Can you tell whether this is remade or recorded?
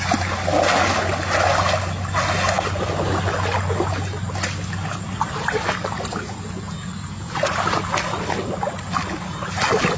recorded